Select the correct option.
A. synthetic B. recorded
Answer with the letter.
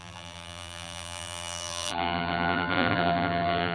A